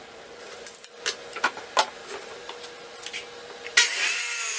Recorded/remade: recorded